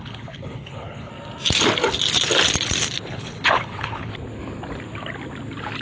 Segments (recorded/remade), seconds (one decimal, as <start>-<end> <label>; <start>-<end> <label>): 0.0-1.1 remade; 1.1-3.1 recorded; 3.1-4.1 remade; 4.1-5.8 recorded